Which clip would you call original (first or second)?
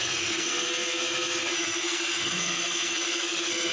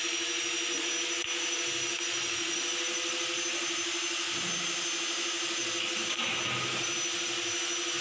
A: second